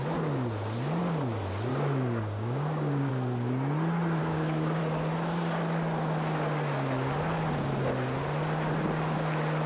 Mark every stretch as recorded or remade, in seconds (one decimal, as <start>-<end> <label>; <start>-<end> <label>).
0.0-1.7 recorded; 1.7-3.1 remade; 3.1-4.2 recorded; 4.2-4.8 remade; 4.8-9.7 recorded